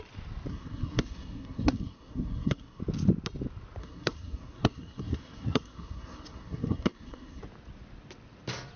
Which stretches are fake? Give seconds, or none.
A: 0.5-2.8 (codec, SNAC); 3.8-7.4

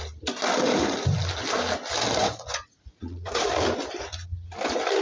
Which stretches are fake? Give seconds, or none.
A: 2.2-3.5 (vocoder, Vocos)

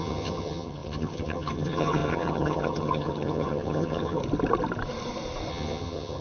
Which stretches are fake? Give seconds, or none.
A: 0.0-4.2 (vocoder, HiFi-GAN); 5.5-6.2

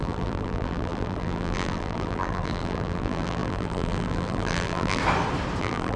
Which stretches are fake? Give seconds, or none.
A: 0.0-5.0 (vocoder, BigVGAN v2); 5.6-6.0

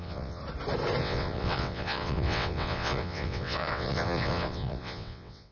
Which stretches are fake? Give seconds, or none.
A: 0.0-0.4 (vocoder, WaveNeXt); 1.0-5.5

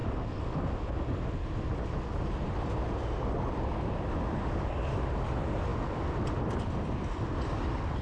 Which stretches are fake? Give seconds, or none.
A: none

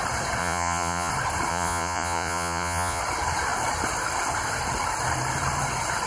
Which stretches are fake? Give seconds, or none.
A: 0.4-1.1 (vocoder, Vocos); 1.5-3.0